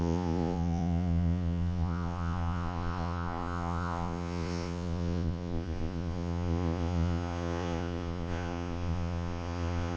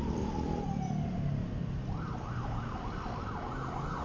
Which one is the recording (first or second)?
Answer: second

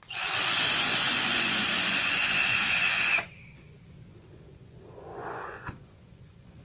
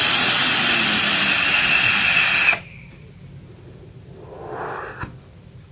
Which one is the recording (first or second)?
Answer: second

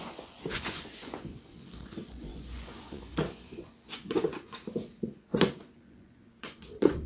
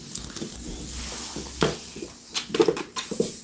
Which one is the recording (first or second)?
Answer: second